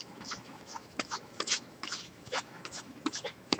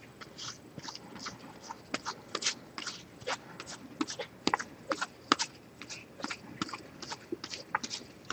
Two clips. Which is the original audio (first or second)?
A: second